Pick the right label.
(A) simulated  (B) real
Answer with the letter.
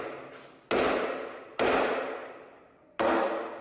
B